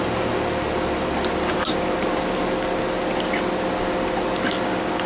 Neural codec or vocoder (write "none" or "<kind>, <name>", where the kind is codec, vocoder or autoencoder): none